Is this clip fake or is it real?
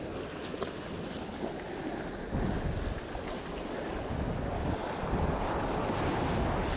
real